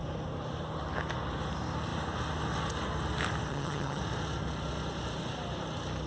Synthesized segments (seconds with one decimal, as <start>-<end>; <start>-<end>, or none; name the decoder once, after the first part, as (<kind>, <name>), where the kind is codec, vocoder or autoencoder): 3.5-4.0 (vocoder, HiFi-GAN)